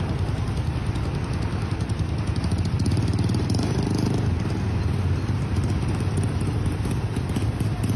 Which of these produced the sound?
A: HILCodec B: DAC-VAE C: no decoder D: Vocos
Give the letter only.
C